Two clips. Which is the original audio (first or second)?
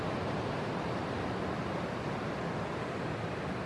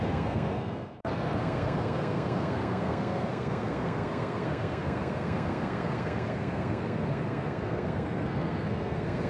first